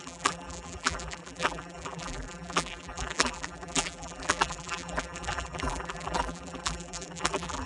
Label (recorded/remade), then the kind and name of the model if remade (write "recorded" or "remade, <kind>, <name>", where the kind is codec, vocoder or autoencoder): remade, vocoder, BigVGAN v2